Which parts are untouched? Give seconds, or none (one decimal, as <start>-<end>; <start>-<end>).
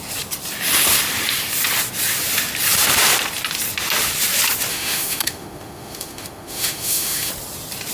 0.0-4.7; 7.3-7.9